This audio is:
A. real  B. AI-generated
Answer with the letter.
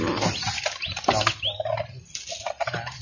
A